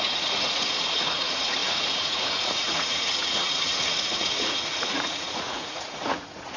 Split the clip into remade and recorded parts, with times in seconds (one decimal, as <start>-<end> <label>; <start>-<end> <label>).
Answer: 0.0-6.6 remade